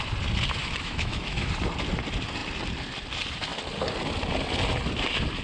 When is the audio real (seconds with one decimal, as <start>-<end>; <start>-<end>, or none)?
0.0-0.6; 1.5-5.4